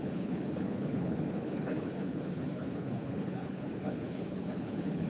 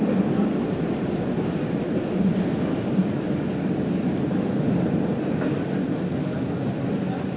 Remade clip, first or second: first